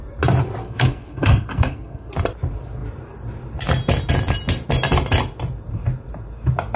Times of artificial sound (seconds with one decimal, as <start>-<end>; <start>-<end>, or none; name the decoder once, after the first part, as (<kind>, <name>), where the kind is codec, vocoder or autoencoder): 0.6-2.1 (codec, SNAC)